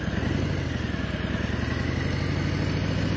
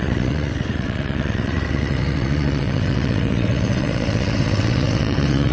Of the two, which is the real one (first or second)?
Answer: first